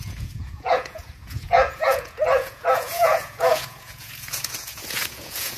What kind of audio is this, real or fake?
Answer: fake